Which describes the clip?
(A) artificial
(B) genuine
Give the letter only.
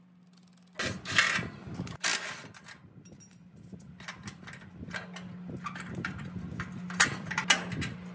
B